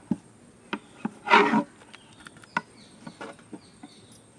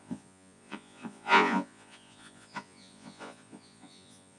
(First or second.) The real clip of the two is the first